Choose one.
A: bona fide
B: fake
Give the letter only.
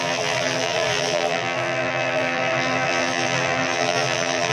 B